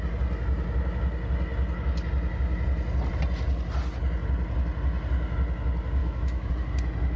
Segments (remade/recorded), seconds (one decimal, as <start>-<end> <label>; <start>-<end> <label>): 0.0-6.0 recorded; 6.0-6.5 remade; 6.5-7.2 recorded